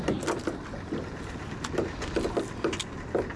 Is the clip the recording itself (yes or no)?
yes